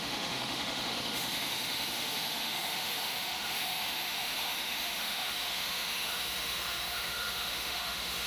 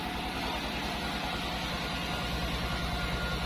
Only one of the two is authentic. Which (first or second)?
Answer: second